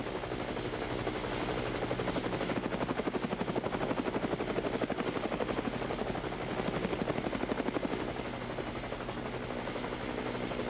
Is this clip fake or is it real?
real